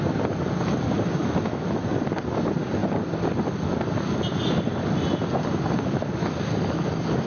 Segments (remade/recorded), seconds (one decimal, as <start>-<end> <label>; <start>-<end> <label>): 0.0-1.2 recorded; 1.2-1.8 remade; 1.8-7.3 recorded